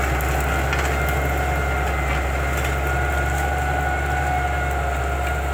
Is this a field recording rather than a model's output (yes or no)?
yes